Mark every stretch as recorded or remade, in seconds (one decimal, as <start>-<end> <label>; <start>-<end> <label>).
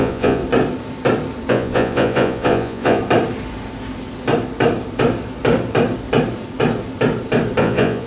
0.0-0.4 remade; 0.4-1.5 recorded; 1.5-3.0 remade; 3.0-7.6 recorded; 7.6-8.1 remade